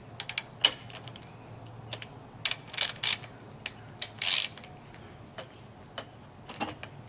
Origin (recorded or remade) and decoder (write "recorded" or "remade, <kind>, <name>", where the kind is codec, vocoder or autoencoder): recorded